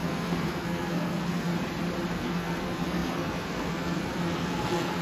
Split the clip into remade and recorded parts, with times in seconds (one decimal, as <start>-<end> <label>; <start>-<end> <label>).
0.0-1.5 remade; 1.5-2.1 recorded; 2.1-5.0 remade